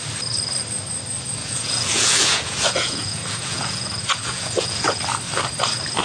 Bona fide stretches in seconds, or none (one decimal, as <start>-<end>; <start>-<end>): 0.0-1.4; 5.0-6.0